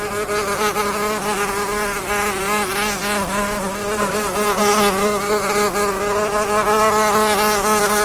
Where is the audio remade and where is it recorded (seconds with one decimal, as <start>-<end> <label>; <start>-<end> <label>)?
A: 0.0-8.0 recorded